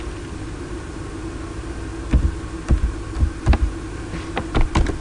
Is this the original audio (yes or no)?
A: yes